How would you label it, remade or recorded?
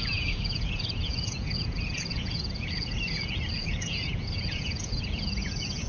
remade